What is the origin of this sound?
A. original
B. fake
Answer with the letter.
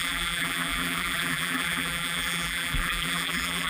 B